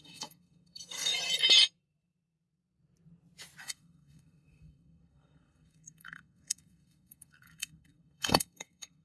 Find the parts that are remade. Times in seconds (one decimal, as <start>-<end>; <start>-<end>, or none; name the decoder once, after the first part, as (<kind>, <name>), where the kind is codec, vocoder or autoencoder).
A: 0.0-1.1 (codec, SNAC); 3.6-9.0